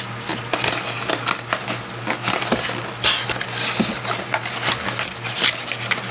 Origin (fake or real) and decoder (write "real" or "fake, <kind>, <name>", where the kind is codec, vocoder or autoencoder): real